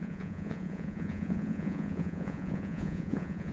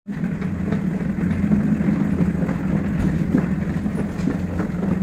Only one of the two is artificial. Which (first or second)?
first